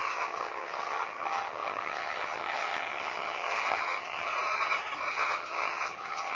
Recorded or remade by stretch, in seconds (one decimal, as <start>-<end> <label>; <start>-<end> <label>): 0.0-4.3 remade; 4.3-5.1 recorded; 5.1-6.3 remade